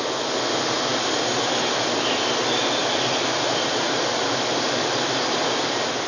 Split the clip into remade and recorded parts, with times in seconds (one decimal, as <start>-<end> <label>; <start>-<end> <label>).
0.0-6.1 recorded